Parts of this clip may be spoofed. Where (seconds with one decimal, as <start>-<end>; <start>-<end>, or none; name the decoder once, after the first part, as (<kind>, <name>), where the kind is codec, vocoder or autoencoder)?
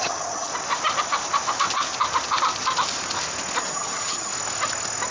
0.0-0.5 (vocoder, HiFi-GAN); 3.6-4.3